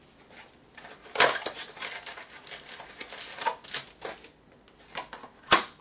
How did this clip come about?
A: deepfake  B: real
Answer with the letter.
B